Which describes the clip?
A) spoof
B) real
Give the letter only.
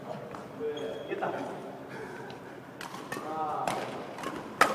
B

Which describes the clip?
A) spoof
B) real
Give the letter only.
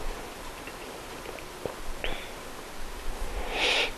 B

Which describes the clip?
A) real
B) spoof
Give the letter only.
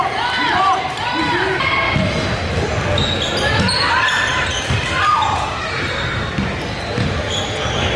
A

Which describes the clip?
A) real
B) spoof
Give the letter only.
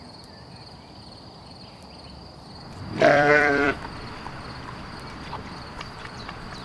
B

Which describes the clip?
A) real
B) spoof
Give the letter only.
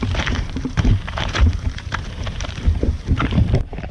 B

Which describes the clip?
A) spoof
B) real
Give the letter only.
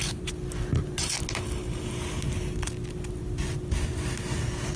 B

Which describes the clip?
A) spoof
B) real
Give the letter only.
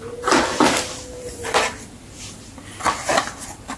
B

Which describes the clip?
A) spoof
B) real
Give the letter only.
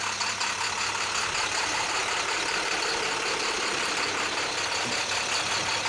B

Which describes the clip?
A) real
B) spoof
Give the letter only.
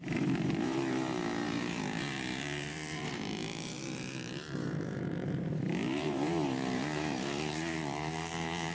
B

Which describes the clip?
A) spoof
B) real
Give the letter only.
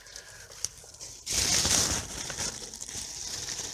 A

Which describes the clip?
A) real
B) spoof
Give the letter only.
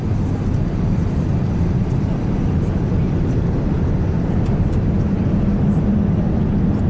A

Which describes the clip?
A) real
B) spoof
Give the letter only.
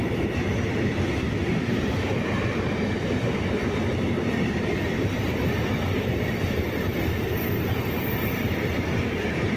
B